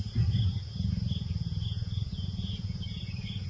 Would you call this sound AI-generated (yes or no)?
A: yes